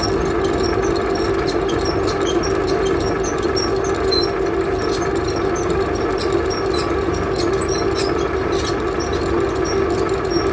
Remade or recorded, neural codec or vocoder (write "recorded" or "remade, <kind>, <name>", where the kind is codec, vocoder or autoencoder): recorded